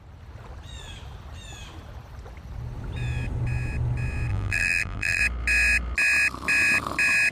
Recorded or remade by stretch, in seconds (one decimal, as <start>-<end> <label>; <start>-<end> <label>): 0.0-4.3 recorded; 4.3-5.2 remade; 5.2-7.3 recorded